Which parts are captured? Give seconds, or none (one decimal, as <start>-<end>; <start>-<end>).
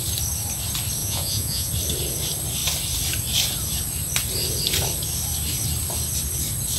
0.0-1.0; 1.7-6.8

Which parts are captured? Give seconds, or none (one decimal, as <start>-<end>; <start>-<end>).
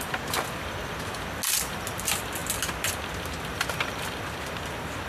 0.0-5.1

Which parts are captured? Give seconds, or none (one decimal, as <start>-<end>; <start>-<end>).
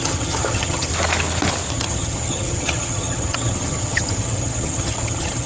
0.9-1.7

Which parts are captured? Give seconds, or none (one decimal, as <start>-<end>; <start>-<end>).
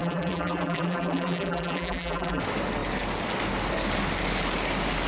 2.4-5.1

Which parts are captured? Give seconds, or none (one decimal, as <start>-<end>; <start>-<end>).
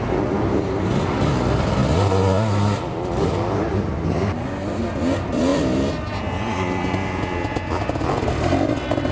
0.0-9.1